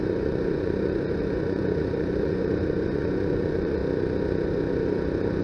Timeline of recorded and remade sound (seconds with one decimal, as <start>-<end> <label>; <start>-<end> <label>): 0.0-3.8 remade; 3.8-5.4 recorded